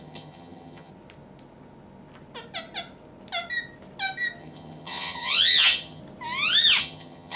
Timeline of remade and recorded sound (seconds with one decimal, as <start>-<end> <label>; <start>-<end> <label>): 0.0-0.9 remade; 0.9-4.4 recorded; 4.4-6.0 remade; 6.0-6.8 recorded; 6.8-7.4 remade